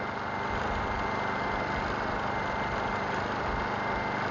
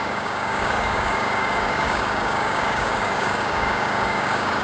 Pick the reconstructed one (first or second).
second